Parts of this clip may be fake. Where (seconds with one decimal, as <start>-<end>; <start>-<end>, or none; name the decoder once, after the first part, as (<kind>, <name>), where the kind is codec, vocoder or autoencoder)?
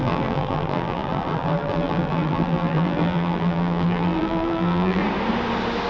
0.0-5.0 (vocoder, BigVGAN v2)